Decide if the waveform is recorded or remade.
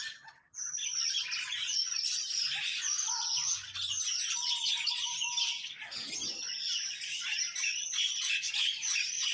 recorded